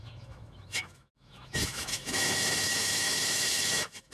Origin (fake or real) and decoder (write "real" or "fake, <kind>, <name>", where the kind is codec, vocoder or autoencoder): fake, autoencoder, DAC-VAE